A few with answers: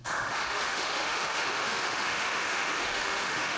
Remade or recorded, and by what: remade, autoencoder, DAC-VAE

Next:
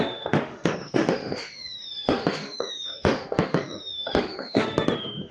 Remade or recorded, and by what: remade, autoencoder, DAC-VAE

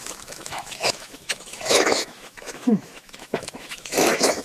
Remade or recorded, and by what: remade, autoencoder, DAC-VAE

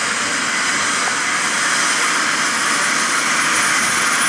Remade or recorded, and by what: recorded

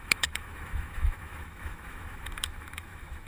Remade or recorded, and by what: remade, autoencoder, DAC-VAE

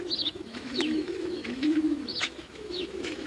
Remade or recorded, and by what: remade, autoencoder, DAC-VAE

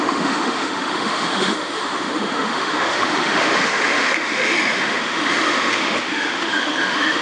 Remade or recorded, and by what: remade, autoencoder, DAC-VAE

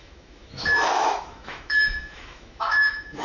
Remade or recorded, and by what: remade, autoencoder, DAC-VAE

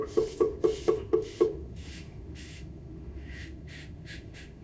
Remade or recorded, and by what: remade, autoencoder, DAC-VAE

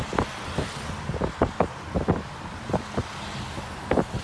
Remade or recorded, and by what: recorded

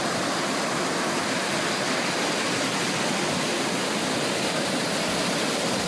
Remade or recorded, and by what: recorded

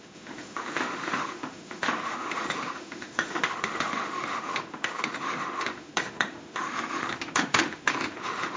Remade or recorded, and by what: remade, autoencoder, DAC-VAE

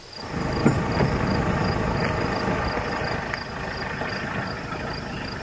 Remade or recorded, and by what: recorded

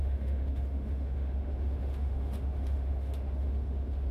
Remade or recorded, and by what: remade, autoencoder, DAC-VAE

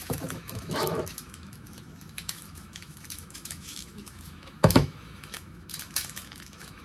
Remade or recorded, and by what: remade, autoencoder, DAC-VAE